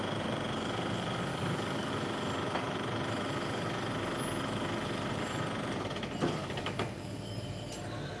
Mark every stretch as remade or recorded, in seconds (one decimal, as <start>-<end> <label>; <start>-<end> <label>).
0.0-1.3 recorded; 1.3-1.9 remade; 1.9-6.4 recorded; 6.4-7.2 remade; 7.2-8.2 recorded